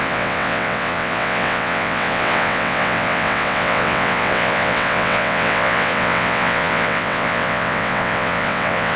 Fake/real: fake